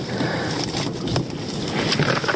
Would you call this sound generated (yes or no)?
no